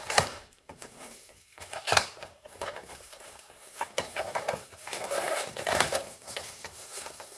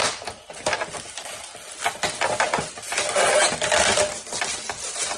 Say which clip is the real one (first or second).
second